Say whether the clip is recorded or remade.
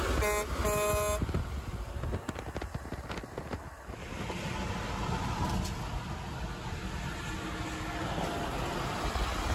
recorded